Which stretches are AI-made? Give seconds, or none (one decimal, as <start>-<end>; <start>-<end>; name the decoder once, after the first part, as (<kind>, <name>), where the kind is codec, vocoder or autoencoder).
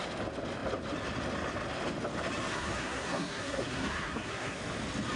2.5-4.6 (codec, SNAC)